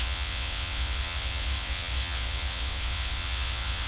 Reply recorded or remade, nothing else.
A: remade